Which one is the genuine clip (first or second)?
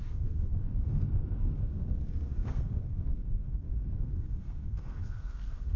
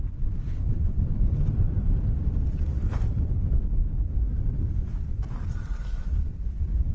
second